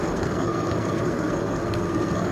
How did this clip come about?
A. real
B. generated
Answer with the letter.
B